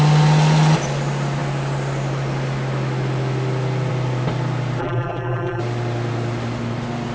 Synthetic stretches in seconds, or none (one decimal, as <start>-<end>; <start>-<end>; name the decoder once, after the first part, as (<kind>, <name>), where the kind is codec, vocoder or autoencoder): 4.8-5.6 (vocoder, BigVGAN v2)